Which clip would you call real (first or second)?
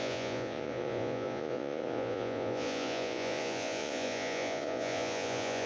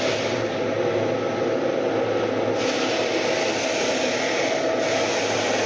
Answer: second